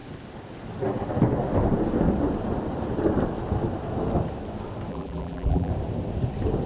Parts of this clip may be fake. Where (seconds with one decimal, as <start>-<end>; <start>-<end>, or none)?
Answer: 4.9-5.7